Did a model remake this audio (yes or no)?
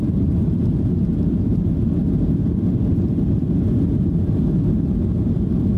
no